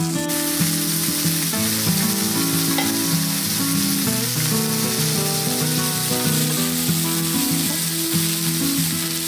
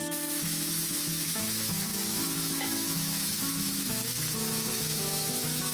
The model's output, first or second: second